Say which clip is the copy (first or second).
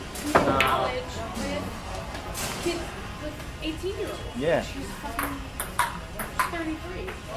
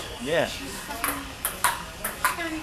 second